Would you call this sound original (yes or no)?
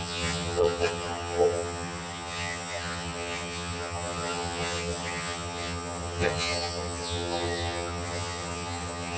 no